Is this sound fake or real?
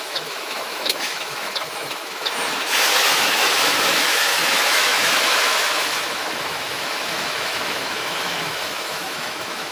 fake